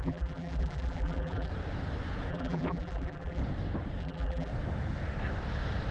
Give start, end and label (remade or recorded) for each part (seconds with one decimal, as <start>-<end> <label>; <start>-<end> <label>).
0.0-1.5 remade; 1.5-2.3 recorded; 2.3-3.4 remade; 3.4-4.0 recorded; 4.0-4.5 remade; 4.5-5.9 recorded